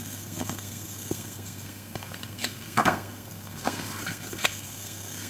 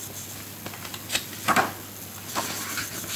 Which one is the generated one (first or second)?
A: first